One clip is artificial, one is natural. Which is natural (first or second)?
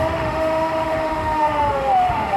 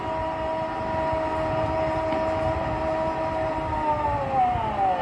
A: second